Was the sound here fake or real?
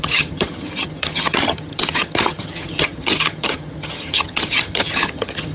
fake